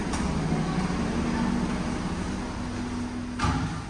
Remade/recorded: recorded